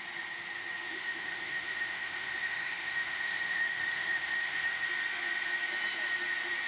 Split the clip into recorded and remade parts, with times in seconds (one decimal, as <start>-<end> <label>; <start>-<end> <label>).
0.0-0.9 recorded; 0.9-4.9 remade; 4.9-6.7 recorded